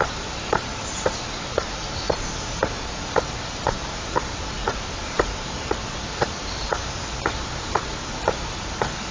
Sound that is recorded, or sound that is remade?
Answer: remade